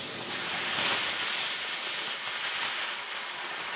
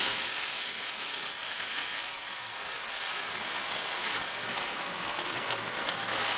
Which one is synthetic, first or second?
second